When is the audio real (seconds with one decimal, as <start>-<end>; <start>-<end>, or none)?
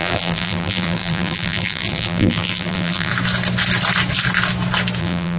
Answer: 3.1-5.0